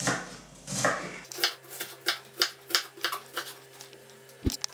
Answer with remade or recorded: recorded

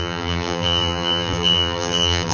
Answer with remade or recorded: remade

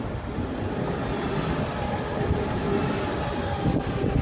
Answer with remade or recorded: recorded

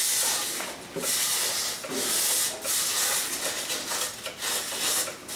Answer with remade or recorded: recorded